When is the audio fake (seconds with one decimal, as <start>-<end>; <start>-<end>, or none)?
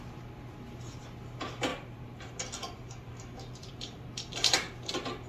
none